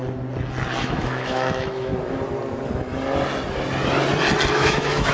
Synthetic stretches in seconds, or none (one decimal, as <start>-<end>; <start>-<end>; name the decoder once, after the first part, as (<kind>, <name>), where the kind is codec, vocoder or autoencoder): 0.8-1.9 (autoencoder, DAC-VAE); 4.5-5.1